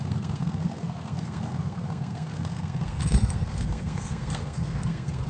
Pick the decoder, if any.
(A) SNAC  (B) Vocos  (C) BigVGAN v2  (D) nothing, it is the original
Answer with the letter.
A